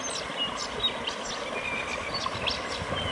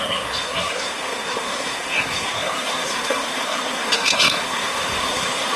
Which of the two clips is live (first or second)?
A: first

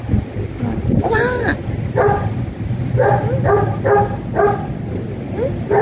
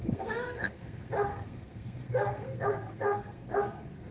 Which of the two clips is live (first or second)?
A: first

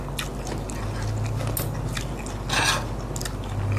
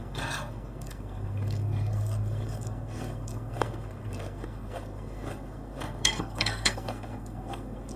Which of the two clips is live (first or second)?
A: first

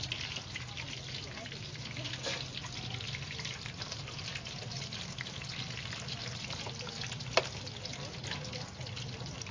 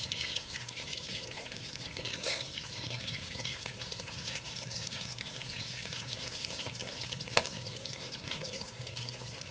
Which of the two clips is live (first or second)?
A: first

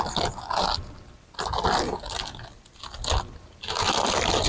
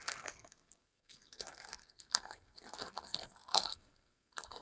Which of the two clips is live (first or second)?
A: first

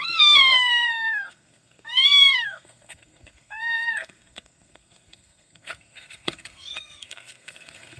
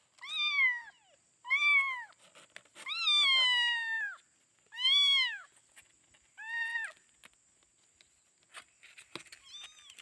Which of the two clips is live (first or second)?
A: second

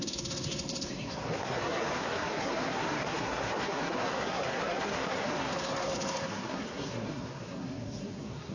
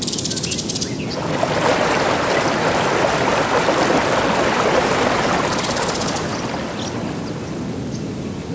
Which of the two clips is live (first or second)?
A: second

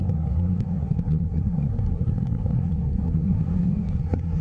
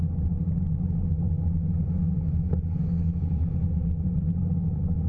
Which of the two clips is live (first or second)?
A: second